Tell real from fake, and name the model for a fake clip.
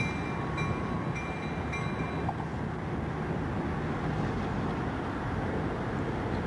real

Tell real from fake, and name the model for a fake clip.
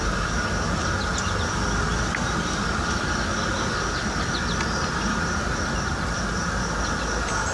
real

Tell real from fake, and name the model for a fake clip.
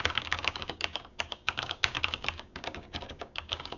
fake, codec, DAC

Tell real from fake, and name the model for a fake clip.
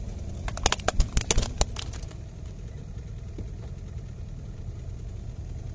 real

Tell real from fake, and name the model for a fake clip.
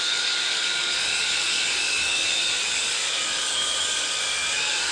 fake, codec, DAC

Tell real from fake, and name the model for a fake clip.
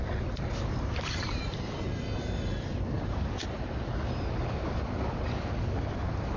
fake, vocoder, BigVGAN v2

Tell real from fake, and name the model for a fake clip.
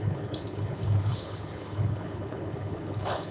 fake, codec, HILCodec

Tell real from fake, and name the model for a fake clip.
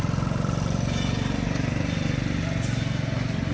real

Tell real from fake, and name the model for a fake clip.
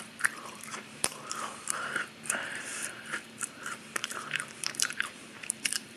fake, vocoder, BigVGAN v2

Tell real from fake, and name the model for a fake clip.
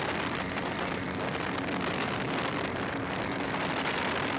fake, vocoder, BigVGAN v2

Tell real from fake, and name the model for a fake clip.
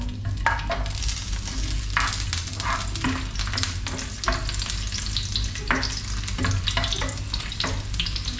real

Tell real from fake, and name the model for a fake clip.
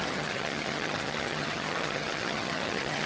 fake, vocoder, HiFi-GAN